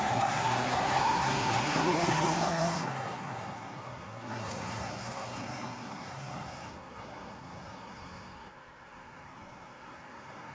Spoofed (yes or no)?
yes